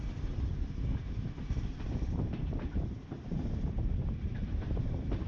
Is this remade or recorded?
remade